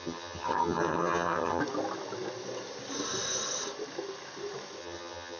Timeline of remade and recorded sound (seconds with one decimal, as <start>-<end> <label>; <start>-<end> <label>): 0.0-1.6 remade; 1.6-4.8 recorded; 4.8-5.4 remade